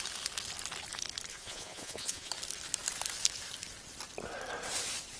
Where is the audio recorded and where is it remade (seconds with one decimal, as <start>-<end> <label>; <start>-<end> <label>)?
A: 0.0-1.3 recorded; 1.3-2.3 remade; 2.3-5.2 recorded